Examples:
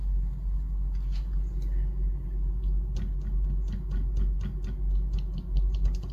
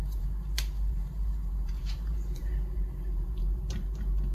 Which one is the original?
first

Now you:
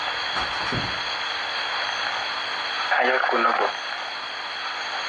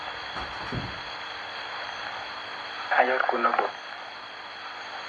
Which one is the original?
first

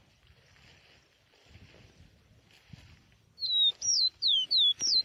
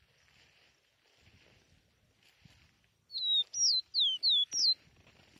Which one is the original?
second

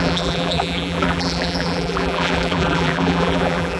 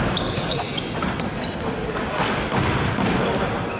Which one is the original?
second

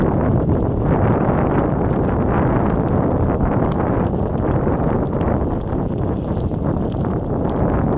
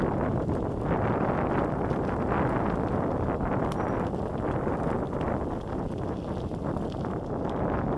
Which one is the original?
second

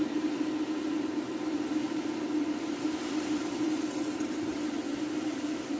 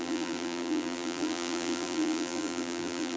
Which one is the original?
first